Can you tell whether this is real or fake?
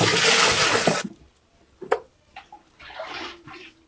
real